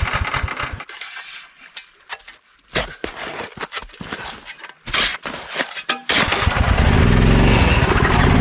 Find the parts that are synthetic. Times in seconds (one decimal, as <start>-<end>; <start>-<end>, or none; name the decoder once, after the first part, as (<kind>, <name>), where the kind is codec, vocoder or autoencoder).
none